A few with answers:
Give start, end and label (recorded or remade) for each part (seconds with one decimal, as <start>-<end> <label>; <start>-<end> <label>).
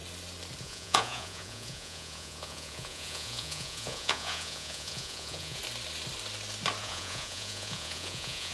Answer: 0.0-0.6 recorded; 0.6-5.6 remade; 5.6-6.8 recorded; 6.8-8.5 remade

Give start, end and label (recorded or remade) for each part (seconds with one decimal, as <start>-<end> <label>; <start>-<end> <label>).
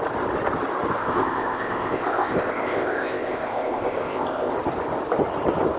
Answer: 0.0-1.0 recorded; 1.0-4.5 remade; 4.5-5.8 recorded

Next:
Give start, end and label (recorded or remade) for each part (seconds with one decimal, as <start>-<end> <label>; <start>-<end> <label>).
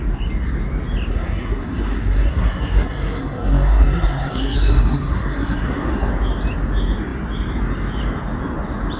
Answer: 0.0-1.1 recorded; 1.1-6.1 remade; 6.1-9.0 recorded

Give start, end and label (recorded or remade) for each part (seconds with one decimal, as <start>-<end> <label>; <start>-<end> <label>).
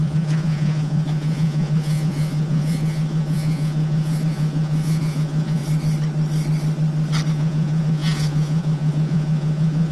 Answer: 0.0-5.6 remade; 5.6-7.3 recorded; 7.3-9.9 remade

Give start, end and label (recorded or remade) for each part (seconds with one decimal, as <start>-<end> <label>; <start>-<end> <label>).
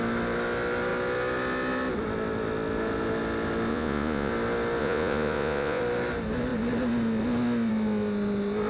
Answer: 0.0-3.7 recorded; 3.7-4.3 remade; 4.3-4.8 recorded; 4.8-5.8 remade; 5.8-8.7 recorded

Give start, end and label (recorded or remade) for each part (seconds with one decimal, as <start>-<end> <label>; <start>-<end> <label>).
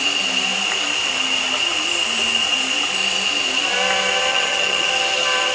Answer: 0.0-4.3 recorded; 4.3-4.9 remade; 4.9-5.5 recorded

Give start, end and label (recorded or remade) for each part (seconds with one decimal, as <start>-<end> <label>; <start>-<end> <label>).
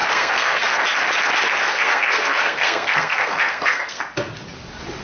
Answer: 0.0-0.8 remade; 0.8-1.6 recorded; 1.6-4.0 remade; 4.0-5.0 recorded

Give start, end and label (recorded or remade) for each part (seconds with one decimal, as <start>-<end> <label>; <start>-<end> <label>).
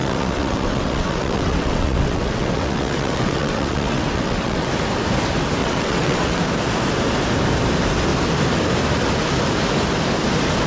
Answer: 0.0-4.7 remade; 4.7-5.6 recorded; 5.6-6.4 remade; 6.4-10.7 recorded